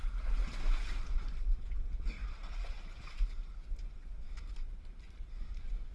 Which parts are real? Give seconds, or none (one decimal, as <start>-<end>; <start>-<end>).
0.0-5.9